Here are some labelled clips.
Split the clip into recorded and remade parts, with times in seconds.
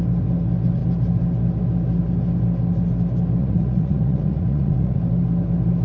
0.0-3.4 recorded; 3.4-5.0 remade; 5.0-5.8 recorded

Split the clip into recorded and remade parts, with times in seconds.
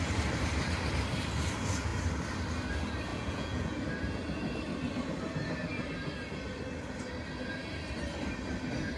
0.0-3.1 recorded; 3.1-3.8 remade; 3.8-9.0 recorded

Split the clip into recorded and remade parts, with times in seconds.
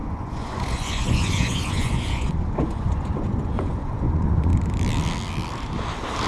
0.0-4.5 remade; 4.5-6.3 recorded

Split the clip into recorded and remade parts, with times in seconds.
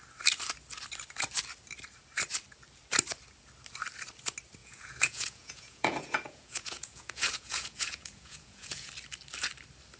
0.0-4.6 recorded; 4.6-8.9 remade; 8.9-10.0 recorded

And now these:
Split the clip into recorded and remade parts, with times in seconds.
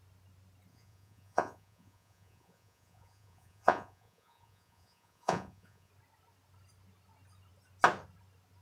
0.0-0.7 recorded; 0.7-5.9 remade; 5.9-8.6 recorded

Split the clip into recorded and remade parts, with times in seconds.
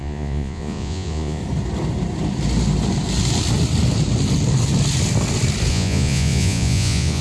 0.0-1.4 remade; 1.4-5.7 recorded; 5.7-7.2 remade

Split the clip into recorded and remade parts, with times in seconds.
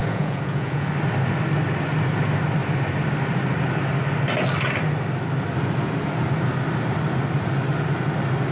0.0-0.9 remade; 0.9-8.5 recorded